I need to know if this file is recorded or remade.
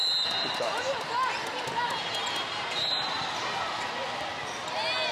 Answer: recorded